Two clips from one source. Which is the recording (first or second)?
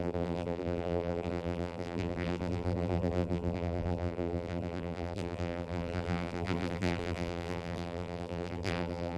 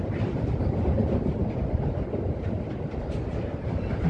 second